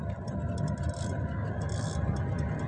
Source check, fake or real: real